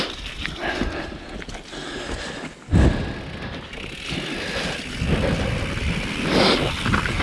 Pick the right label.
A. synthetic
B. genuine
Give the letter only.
B